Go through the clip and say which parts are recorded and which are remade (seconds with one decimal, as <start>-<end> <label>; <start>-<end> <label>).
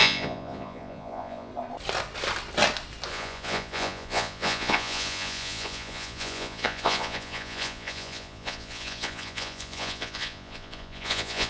0.0-1.5 remade; 1.5-3.1 recorded; 3.1-11.5 remade